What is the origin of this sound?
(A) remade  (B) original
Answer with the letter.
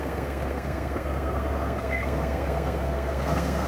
A